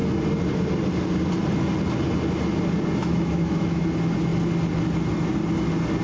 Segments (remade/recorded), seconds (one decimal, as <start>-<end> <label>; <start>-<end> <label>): 0.0-3.0 recorded; 3.0-3.8 remade; 3.8-6.0 recorded